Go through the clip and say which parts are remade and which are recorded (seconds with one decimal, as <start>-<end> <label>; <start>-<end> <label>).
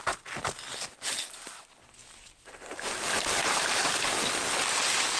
0.0-2.0 recorded; 2.0-3.8 remade; 3.8-5.2 recorded